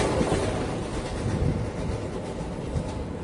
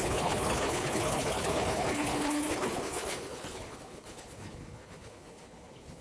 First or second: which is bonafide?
first